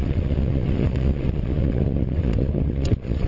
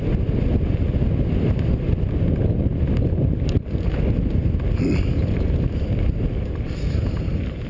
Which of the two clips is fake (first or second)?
first